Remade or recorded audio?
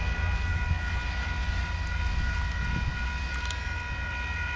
recorded